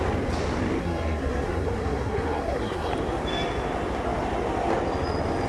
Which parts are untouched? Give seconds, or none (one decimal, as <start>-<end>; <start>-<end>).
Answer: 0.0-0.8; 2.9-5.5